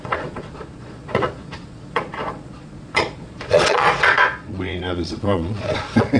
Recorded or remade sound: remade